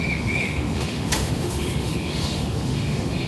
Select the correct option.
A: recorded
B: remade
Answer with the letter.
B